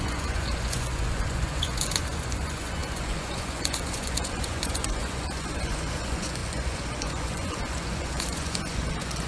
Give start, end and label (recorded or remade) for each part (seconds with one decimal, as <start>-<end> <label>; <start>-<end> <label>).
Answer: 0.0-9.3 remade